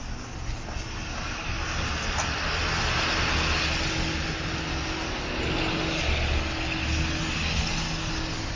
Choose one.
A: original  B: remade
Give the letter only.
A